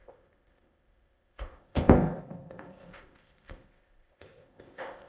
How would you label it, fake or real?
fake